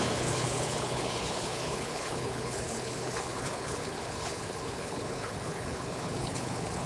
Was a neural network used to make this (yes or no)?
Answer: yes